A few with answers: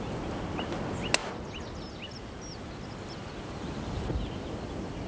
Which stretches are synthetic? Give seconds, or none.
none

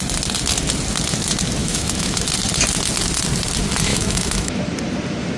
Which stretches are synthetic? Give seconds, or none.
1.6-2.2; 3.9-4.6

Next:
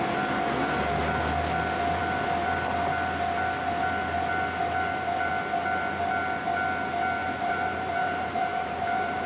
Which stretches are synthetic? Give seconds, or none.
7.2-9.3

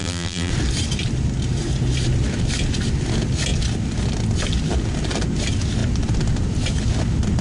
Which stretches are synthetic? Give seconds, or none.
0.0-0.5